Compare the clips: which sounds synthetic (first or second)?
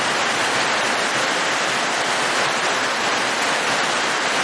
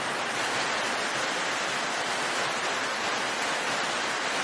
first